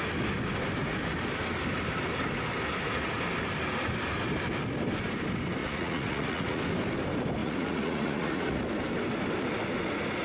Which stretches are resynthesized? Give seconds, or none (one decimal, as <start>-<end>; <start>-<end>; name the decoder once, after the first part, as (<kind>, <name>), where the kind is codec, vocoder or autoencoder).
5.6-6.6 (vocoder, Vocos); 7.4-8.6

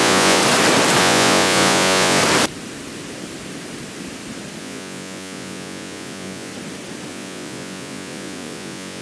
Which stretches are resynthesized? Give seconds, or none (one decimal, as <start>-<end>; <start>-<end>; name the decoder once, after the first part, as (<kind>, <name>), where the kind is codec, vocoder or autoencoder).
0.0-0.4 (vocoder, Vocos); 1.0-2.2; 4.6-6.5; 7.1-9.0

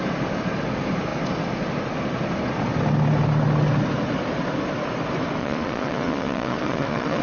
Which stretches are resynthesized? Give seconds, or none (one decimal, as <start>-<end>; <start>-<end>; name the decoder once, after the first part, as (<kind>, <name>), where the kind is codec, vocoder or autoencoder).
5.4-7.2 (vocoder, Vocos)

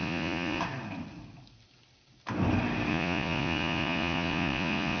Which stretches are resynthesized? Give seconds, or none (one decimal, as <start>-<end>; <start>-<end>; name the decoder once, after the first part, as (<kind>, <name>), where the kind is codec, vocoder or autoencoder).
0.0-0.6 (vocoder, Vocos); 2.9-5.0

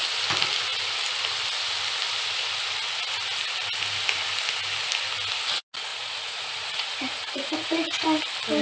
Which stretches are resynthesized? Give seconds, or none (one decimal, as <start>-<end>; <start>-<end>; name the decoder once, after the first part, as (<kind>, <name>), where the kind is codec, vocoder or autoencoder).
5.9-8.2 (vocoder, Vocos)